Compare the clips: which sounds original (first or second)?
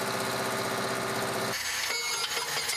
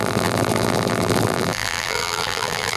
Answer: first